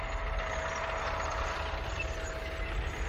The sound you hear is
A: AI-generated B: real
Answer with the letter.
B